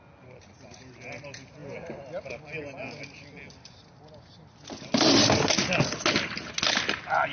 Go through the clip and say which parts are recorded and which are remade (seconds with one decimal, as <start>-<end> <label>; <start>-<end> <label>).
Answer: 0.0-7.3 recorded